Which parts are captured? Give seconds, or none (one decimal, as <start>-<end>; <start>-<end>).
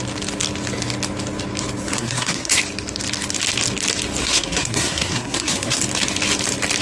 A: 0.0-2.0; 2.6-4.2; 5.8-6.8